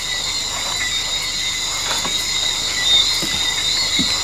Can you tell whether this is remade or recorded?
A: recorded